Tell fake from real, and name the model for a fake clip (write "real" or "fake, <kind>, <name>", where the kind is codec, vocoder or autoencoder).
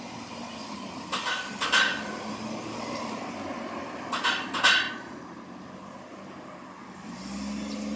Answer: real